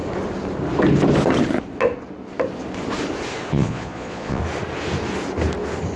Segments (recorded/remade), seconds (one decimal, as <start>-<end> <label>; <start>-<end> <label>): 0.0-3.5 recorded; 3.5-4.4 remade; 4.4-6.0 recorded